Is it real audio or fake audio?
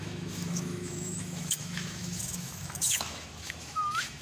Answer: fake